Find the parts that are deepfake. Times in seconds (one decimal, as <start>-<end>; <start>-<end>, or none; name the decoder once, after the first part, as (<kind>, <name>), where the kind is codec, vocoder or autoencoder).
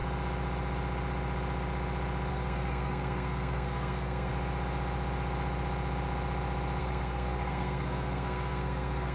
2.3-4.3 (codec, SNAC); 6.8-9.1